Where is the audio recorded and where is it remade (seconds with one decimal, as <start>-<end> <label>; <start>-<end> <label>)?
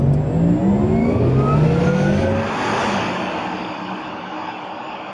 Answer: 0.0-1.0 recorded; 1.0-2.2 remade; 2.2-2.7 recorded; 2.7-5.1 remade